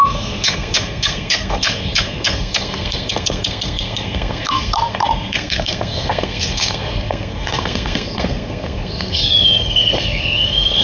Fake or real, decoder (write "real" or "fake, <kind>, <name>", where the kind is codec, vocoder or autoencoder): fake, codec, SNAC